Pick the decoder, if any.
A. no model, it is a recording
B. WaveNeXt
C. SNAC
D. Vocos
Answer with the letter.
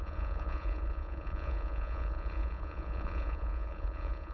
D